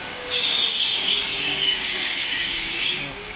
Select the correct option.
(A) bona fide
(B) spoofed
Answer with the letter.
B